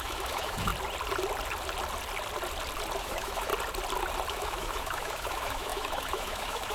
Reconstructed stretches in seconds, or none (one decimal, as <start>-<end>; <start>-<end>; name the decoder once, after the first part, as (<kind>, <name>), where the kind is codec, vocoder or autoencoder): 0.0-0.7 (autoencoder, DAC-VAE); 3.0-3.5; 4.3-6.7